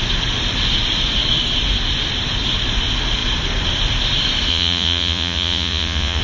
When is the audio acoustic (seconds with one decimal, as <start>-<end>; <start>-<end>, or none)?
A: 0.0-4.5